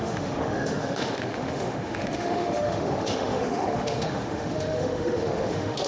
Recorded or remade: remade